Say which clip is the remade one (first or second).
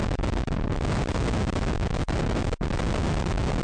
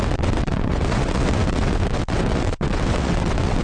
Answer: second